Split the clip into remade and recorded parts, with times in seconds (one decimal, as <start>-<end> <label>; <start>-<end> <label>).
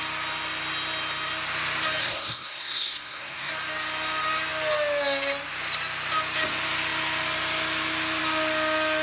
0.0-2.0 recorded; 2.0-3.5 remade; 3.5-9.0 recorded